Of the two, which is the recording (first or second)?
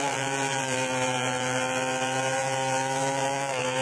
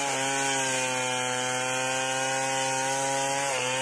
second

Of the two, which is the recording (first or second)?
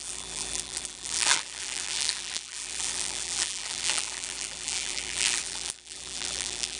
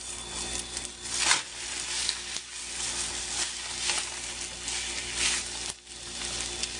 second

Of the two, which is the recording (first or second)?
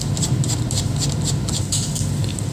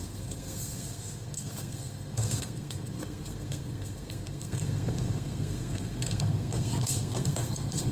first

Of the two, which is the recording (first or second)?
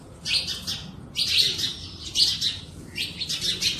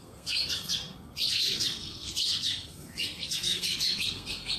first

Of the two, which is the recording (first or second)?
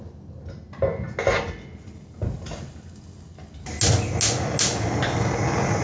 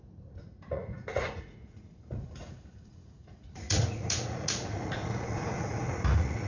first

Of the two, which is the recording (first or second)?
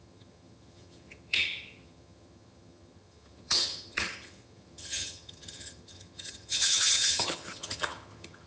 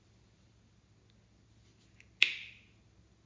second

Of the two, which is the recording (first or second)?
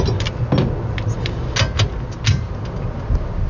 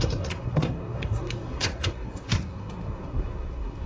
first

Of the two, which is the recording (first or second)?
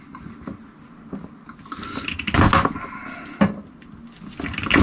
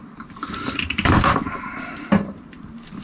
first